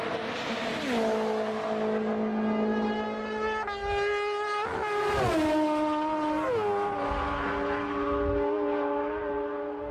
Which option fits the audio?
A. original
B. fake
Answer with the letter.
A